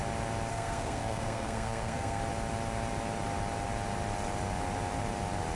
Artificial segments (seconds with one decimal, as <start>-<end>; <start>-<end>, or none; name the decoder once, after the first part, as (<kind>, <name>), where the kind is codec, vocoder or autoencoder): 0.5-2.2 (codec, SNAC)